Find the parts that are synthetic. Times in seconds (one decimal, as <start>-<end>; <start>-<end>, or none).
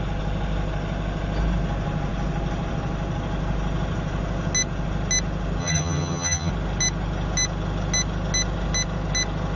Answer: 5.6-6.5